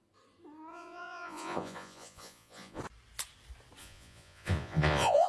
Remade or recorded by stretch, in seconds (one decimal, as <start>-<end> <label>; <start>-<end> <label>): 0.0-0.7 recorded; 0.7-2.8 remade; 2.8-3.8 recorded; 3.8-5.3 remade